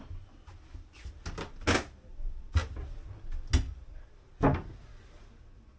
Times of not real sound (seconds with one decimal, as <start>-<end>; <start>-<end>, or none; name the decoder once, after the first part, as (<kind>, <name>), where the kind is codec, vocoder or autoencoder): none